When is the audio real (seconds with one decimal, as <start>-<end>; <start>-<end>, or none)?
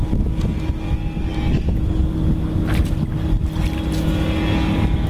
0.0-5.1